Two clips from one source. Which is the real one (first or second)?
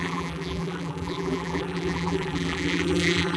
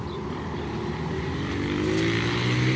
second